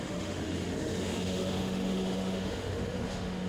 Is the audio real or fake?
fake